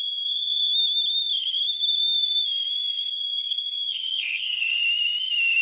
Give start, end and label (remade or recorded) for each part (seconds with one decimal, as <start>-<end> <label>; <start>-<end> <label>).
0.0-0.7 remade; 0.7-3.1 recorded; 3.1-4.8 remade; 4.8-5.6 recorded